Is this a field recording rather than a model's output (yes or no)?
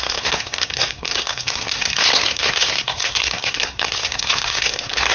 no